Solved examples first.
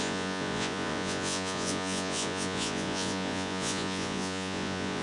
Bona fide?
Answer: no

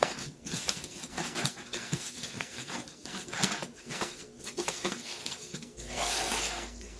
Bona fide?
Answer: no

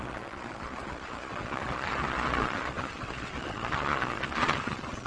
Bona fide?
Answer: no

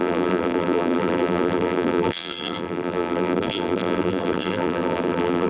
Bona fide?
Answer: no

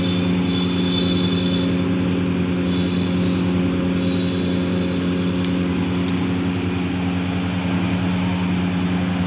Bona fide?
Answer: yes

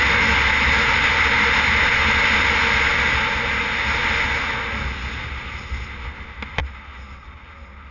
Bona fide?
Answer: yes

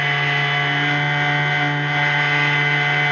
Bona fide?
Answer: yes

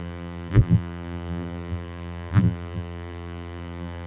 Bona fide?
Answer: no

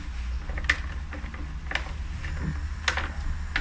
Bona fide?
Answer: yes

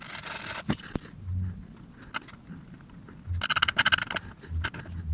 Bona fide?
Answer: yes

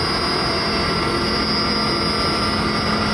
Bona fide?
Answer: yes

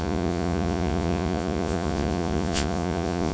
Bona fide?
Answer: no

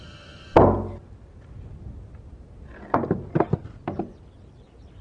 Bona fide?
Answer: yes